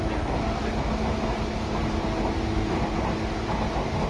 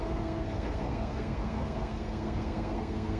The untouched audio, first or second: first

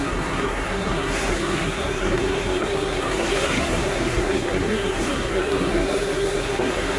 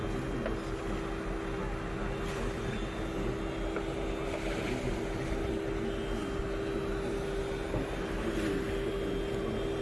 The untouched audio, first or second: second